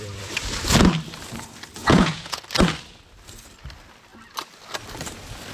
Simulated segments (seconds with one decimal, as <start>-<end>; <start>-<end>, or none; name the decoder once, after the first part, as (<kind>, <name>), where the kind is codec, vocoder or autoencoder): 1.8-2.4 (vocoder, Vocos)